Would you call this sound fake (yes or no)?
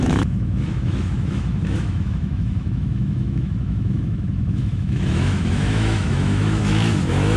yes